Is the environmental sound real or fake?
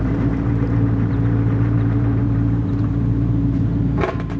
fake